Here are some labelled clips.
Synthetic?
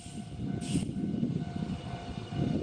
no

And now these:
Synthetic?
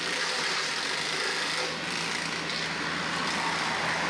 no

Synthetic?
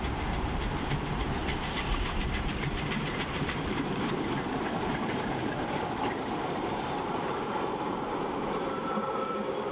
yes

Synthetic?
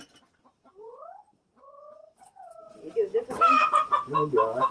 no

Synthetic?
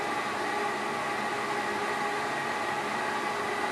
no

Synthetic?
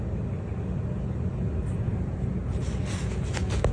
no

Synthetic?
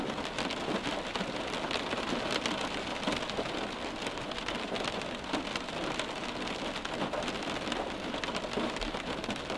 no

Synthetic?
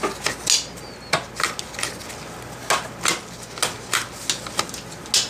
no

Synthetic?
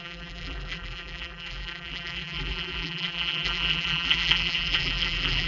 yes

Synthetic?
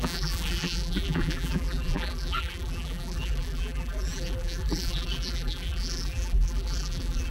yes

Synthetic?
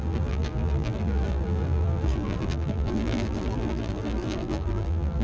yes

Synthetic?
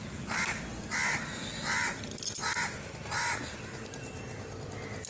no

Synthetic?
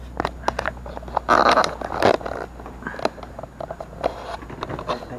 no